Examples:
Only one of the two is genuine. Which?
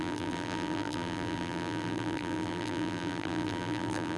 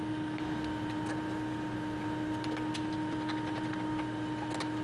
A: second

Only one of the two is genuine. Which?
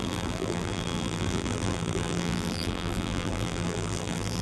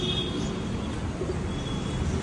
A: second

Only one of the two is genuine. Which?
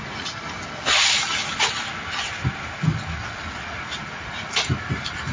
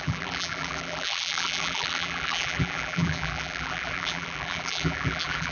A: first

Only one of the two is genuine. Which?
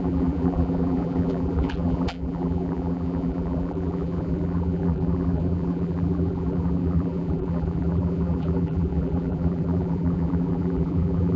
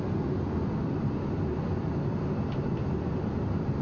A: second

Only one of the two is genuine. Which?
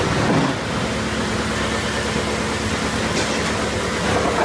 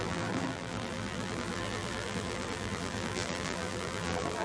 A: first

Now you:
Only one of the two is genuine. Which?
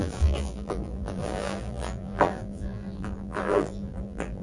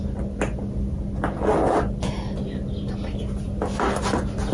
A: second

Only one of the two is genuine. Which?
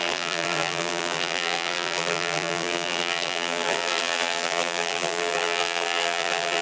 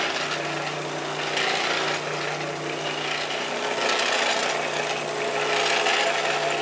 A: second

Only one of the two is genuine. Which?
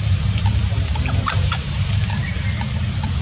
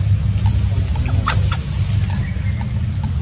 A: second